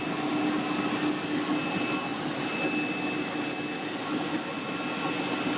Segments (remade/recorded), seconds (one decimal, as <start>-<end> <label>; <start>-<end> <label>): 0.0-5.6 recorded